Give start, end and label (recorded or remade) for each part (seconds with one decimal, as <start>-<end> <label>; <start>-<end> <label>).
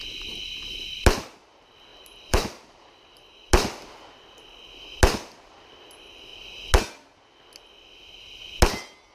0.0-1.9 recorded; 1.9-3.5 remade; 3.5-9.1 recorded